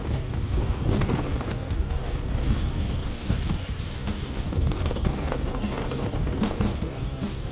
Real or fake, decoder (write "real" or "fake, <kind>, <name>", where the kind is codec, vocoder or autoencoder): fake, codec, DAC